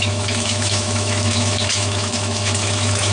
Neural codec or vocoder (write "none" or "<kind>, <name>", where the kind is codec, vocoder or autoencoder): autoencoder, DAC-VAE